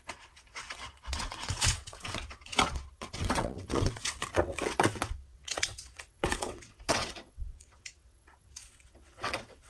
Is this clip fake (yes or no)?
yes